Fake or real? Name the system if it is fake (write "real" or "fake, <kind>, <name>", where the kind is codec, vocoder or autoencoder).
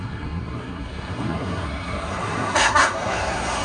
fake, codec, SNAC